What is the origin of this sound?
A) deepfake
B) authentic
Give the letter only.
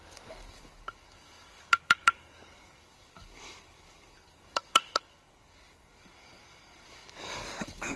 A